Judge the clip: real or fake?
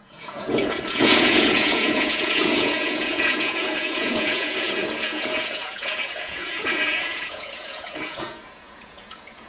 fake